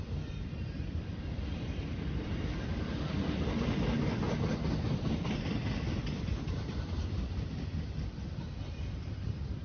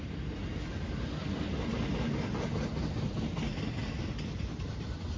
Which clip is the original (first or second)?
second